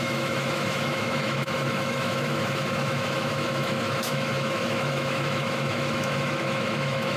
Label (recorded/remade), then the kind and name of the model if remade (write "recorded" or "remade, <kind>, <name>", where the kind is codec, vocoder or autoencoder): remade, autoencoder, DAC-VAE